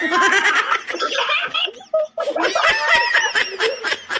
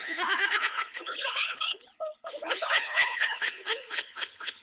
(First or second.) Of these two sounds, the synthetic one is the second